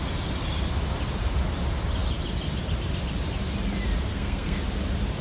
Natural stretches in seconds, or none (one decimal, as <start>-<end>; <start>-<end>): 0.0-4.1; 4.6-5.2